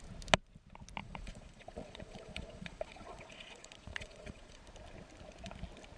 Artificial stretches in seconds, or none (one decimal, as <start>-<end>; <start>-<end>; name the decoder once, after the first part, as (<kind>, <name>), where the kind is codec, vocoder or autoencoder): 1.0-4.6 (vocoder, Vocos)